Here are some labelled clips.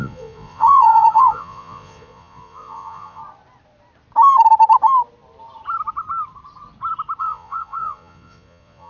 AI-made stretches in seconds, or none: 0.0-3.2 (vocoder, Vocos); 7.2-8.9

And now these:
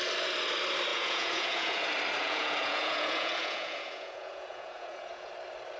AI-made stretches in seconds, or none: 0.9-1.8 (vocoder, Vocos); 2.2-5.3

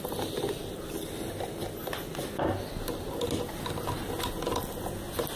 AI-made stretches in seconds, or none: none

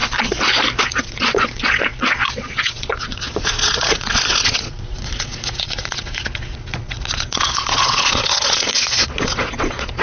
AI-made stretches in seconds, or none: 0.8-10.0 (vocoder, Vocos)

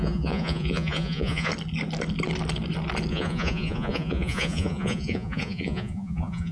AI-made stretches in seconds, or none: 0.0-1.5 (vocoder, Vocos); 3.1-6.5

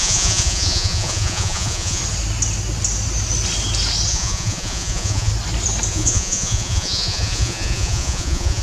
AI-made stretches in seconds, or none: 0.0-2.0 (vocoder, Vocos); 4.1-5.3; 5.9-8.6

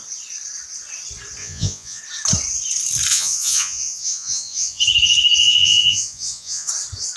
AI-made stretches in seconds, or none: 1.4-2.0 (vocoder, Vocos); 3.1-4.8; 5.4-6.7

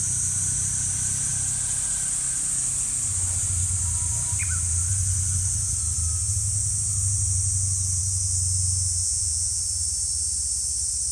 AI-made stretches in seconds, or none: 9.0-9.6 (vocoder, Vocos)